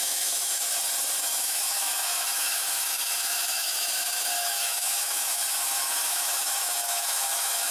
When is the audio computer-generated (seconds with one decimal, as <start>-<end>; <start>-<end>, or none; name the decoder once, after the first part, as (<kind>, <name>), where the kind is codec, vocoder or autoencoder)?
0.0-0.6 (autoencoder, DAC-VAE); 1.2-7.7